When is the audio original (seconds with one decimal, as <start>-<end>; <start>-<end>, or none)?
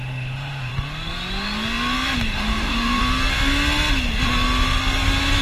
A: 0.7-2.3; 3.0-5.4